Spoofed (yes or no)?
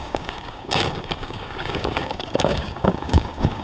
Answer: yes